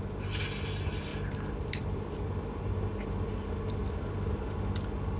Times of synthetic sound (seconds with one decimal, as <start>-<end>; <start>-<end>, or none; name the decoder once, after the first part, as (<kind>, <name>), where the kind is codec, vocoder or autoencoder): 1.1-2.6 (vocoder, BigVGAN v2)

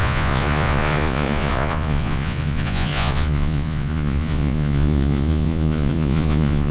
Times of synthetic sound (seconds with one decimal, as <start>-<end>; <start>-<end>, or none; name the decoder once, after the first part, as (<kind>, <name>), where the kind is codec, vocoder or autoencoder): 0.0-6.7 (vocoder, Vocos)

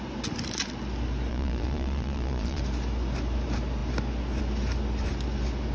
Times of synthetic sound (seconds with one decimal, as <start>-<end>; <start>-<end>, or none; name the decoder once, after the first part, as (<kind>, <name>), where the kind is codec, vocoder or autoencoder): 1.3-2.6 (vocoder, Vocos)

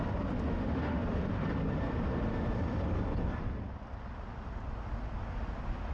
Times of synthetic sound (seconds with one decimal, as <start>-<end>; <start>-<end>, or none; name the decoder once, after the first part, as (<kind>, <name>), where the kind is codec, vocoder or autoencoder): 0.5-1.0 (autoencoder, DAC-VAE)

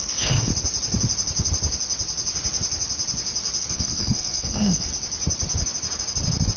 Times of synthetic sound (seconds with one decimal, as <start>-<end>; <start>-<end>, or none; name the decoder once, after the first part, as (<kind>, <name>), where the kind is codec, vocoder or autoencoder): 0.0-0.5 (codec, SNAC); 3.6-4.9